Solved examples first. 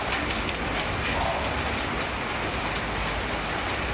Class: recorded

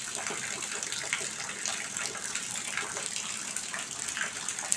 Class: recorded